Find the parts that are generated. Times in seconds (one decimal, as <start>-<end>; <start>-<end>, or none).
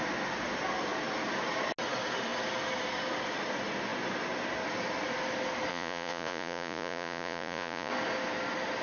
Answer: 5.7-7.9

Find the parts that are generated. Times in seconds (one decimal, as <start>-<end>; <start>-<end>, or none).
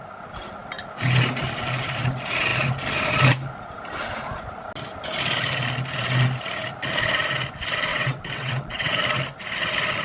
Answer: 7.9-8.9